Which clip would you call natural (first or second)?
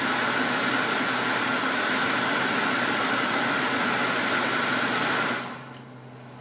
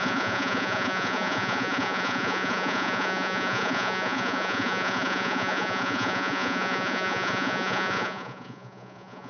first